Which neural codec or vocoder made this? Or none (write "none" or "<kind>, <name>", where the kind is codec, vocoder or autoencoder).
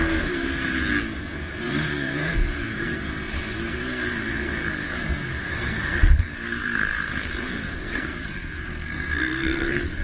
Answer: codec, SNAC